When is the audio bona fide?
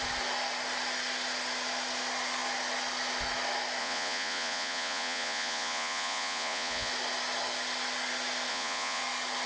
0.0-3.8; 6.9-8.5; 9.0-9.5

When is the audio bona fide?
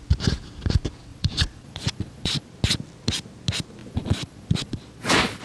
0.0-1.1; 2.5-3.8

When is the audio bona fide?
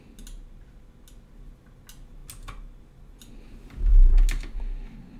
0.0-5.2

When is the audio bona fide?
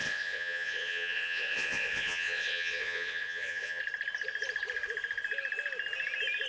3.8-6.5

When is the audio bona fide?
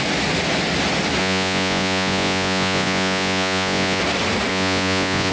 0.0-1.2; 4.0-4.5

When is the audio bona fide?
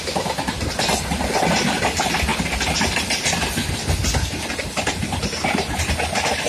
0.0-6.5